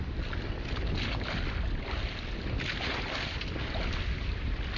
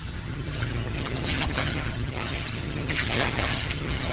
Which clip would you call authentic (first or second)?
first